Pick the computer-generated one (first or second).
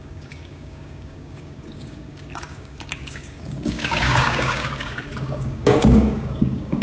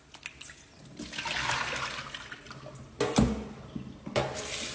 first